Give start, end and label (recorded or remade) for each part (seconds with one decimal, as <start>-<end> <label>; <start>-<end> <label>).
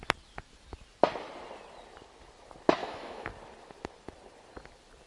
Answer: 0.0-2.8 recorded; 2.8-3.3 remade; 3.3-5.1 recorded